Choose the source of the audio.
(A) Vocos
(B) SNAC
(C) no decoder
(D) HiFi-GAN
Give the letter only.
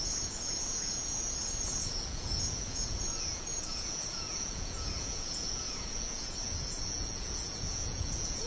A